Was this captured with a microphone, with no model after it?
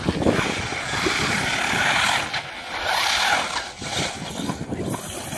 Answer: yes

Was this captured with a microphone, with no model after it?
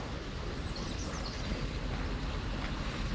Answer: yes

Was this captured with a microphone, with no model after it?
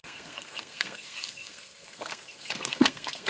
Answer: no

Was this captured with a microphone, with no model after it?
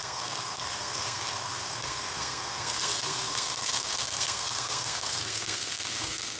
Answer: no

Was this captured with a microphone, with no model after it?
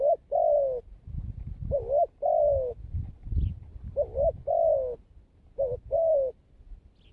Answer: yes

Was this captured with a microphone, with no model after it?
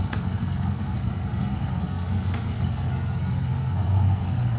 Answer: no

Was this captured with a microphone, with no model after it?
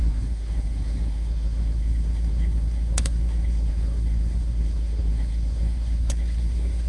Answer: no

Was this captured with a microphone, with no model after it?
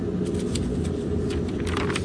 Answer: yes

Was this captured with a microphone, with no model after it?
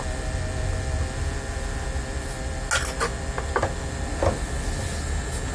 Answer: yes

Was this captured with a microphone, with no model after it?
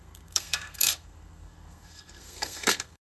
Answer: no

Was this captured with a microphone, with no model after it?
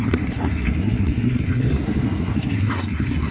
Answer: no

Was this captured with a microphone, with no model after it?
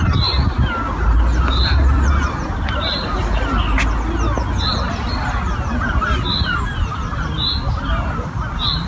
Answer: yes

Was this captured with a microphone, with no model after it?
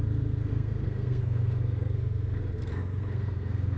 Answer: no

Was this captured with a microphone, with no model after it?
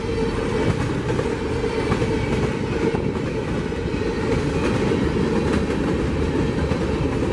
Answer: yes